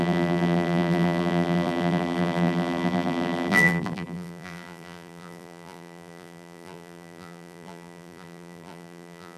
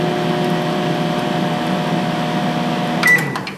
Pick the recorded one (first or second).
second